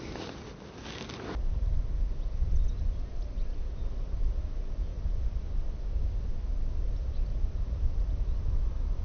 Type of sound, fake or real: real